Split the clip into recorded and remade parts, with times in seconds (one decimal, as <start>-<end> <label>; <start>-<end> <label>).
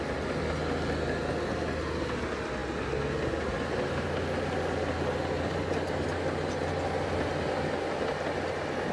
0.0-8.9 recorded